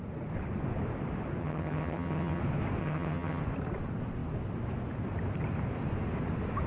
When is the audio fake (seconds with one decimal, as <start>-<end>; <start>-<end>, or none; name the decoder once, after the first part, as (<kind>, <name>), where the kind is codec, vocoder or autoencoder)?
1.4-2.4 (vocoder, HiFi-GAN); 2.8-3.4